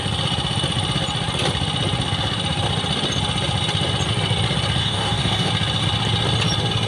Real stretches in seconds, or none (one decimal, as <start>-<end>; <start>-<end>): 0.0-4.8; 5.5-6.9